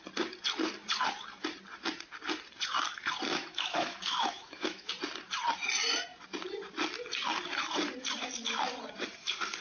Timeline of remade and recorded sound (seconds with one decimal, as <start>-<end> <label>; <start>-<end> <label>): 0.0-3.3 recorded; 3.3-4.9 remade; 4.9-9.6 recorded